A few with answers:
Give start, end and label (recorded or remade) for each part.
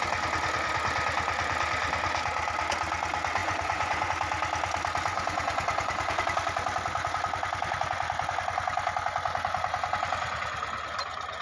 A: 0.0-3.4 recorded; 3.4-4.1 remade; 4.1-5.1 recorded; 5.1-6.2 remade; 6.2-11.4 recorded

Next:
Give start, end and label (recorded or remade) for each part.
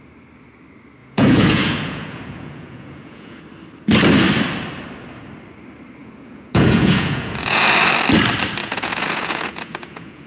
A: 0.0-1.0 recorded; 1.0-3.4 remade; 3.4-6.0 recorded; 6.0-7.6 remade; 7.6-8.6 recorded; 8.6-10.3 remade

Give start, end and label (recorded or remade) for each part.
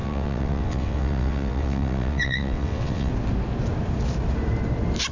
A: 0.0-3.1 remade; 3.1-5.1 recorded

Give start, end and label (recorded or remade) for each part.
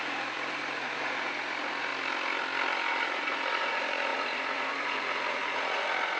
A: 0.0-1.9 remade; 1.9-2.9 recorded; 2.9-6.2 remade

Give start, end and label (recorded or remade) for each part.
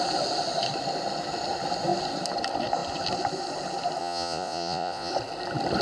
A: 0.0-4.0 recorded; 4.0-5.1 remade; 5.1-5.8 recorded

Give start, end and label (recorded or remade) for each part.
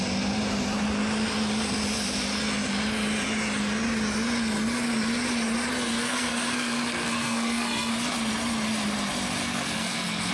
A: 0.0-6.0 recorded; 6.0-7.9 remade; 7.9-9.4 recorded; 9.4-10.3 remade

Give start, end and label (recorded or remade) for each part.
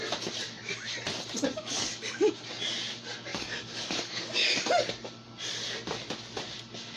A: 0.0-1.5 recorded; 1.5-2.3 remade; 2.3-3.3 recorded; 3.3-4.9 remade; 4.9-7.0 recorded